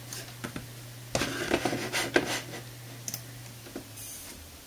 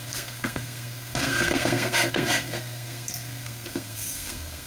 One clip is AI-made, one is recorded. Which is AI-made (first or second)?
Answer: second